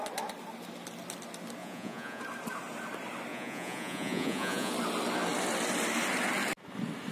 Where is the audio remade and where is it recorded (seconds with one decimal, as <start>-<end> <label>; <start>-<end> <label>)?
0.0-1.6 recorded; 1.6-2.2 remade; 2.2-3.3 recorded; 3.3-4.7 remade; 4.7-7.1 recorded